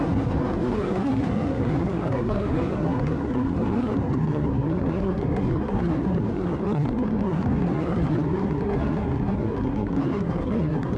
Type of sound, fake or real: fake